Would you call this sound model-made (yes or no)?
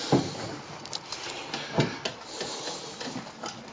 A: no